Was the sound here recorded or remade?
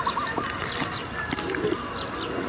recorded